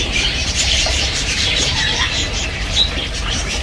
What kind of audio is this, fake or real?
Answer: fake